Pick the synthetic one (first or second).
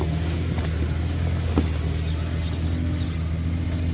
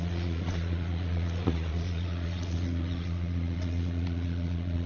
second